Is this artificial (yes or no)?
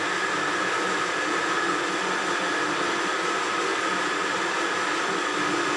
no